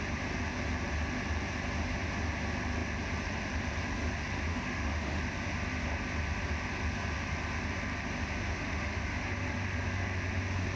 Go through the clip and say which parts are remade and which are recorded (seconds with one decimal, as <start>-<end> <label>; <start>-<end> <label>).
0.0-4.5 recorded; 4.5-5.2 remade; 5.2-8.4 recorded; 8.4-9.0 remade; 9.0-10.8 recorded